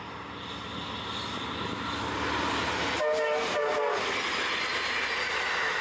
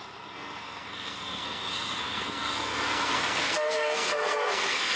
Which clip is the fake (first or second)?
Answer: second